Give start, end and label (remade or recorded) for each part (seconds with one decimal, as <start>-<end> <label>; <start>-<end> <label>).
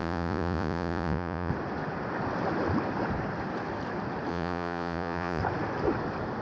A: 0.0-1.5 remade; 1.5-4.3 recorded; 4.3-5.4 remade; 5.4-6.4 recorded